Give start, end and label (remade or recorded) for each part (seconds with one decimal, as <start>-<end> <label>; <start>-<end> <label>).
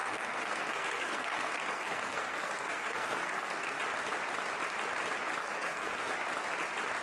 0.0-3.8 remade; 3.8-5.4 recorded; 5.4-6.1 remade; 6.1-7.0 recorded